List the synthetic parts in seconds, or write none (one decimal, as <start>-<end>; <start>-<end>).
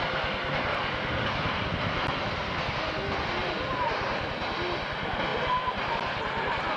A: 3.4-4.1